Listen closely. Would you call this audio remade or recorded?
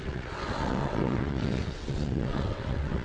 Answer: remade